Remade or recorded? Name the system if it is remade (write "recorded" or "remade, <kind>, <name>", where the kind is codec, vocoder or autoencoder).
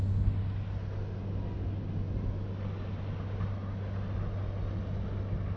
recorded